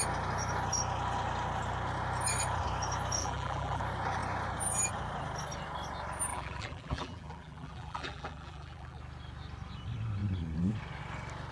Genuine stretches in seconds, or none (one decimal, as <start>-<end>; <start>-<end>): 0.0-3.2; 3.8-6.3; 9.0-11.5